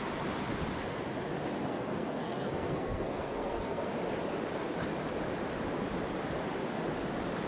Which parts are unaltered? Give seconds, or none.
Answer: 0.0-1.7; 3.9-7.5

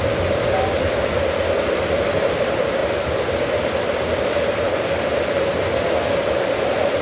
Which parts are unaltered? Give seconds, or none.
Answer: 0.0-7.0

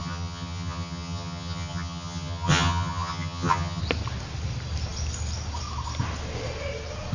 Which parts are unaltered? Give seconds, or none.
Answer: 3.8-7.1

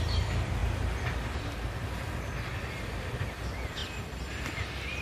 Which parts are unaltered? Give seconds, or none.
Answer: 0.0-5.0

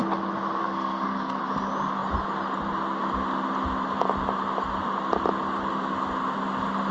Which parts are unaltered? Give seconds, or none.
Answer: 0.0-0.6; 1.4-6.9

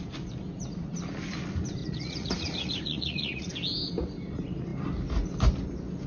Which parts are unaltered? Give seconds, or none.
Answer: 0.0-1.8; 3.5-6.1